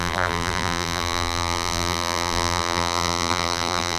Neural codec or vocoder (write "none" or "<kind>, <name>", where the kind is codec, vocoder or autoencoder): vocoder, BigVGAN v2